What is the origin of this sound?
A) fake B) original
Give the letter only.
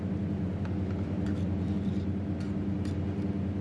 B